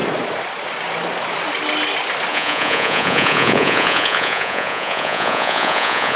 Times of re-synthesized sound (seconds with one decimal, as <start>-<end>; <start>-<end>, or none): 2.3-6.2